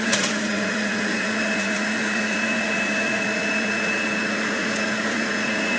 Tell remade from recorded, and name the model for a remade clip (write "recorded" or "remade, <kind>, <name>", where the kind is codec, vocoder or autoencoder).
remade, vocoder, Vocos